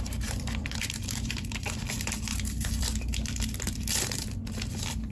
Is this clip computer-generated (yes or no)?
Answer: yes